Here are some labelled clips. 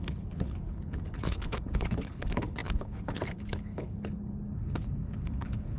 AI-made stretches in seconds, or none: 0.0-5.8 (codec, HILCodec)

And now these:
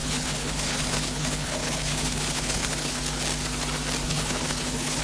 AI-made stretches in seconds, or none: 0.0-3.0 (codec, HILCodec); 4.0-5.0

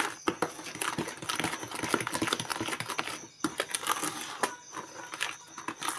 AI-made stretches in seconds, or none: none

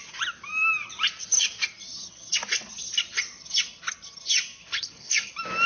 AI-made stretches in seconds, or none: 4.6-5.3 (codec, HILCodec)

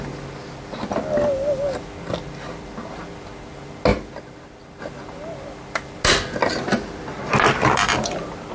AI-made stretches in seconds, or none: none